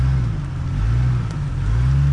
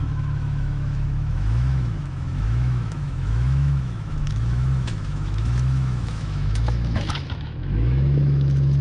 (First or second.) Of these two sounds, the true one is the first